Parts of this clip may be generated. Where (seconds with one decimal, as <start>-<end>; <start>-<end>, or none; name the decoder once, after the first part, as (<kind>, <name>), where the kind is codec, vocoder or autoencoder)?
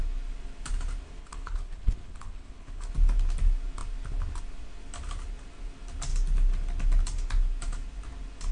1.2-2.9 (codec, HILCodec)